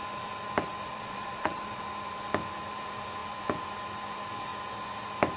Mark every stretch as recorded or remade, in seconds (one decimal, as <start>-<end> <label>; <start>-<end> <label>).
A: 0.0-0.9 recorded; 0.9-1.8 remade; 1.8-5.4 recorded